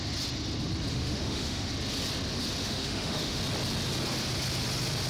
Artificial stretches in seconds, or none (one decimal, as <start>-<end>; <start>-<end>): 0.9-1.7; 2.6-3.4